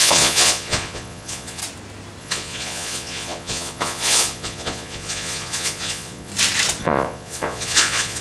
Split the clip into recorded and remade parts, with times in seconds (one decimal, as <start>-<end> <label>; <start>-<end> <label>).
0.0-1.6 remade; 1.6-2.2 recorded; 2.2-6.3 remade; 6.3-6.8 recorded; 6.8-8.2 remade